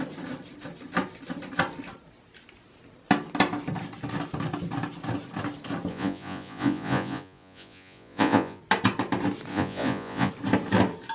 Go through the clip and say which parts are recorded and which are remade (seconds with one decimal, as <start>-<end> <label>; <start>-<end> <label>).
0.0-5.9 recorded; 5.9-8.6 remade; 8.6-9.5 recorded; 9.5-10.3 remade; 10.3-11.1 recorded